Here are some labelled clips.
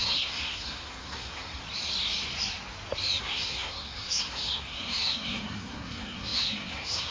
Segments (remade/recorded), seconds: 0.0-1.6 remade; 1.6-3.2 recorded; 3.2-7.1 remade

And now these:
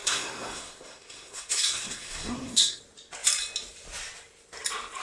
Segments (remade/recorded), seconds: 0.0-2.8 remade; 2.8-5.0 recorded